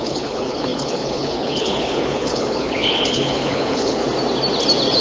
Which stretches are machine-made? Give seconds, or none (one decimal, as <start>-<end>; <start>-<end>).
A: 0.0-4.0